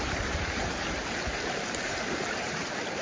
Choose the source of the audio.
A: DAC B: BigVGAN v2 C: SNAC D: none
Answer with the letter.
B